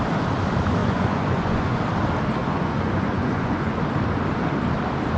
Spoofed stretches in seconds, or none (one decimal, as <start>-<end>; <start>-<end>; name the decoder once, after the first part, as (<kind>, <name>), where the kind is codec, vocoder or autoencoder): 0.8-1.8 (vocoder, Vocos); 2.4-3.8

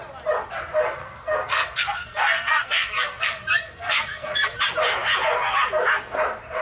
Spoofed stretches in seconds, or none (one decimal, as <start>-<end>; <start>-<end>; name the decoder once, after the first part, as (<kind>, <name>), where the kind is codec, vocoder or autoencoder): 1.0-4.6 (codec, SNAC)

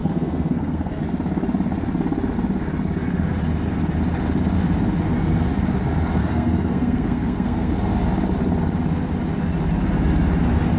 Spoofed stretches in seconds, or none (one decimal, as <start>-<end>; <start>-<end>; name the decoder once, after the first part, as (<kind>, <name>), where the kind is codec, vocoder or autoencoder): 0.0-1.0 (codec, SNAC); 6.2-7.7

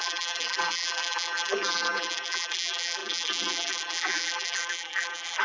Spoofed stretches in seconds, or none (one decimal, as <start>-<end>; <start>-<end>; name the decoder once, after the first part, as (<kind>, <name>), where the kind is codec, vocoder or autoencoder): 0.0-5.4 (vocoder, BigVGAN v2)

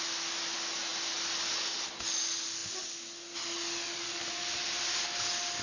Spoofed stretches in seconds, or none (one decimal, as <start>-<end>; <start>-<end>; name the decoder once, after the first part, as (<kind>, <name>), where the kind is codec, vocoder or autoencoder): none

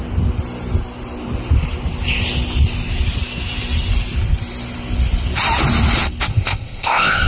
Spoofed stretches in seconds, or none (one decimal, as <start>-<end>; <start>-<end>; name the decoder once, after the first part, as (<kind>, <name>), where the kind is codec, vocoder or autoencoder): 6.3-7.3 (codec, ZipCodec)